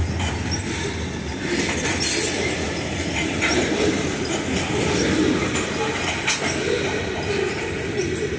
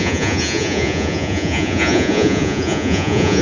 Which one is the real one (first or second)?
first